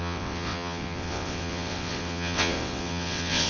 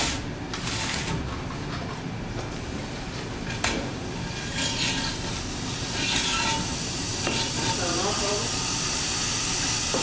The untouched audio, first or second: second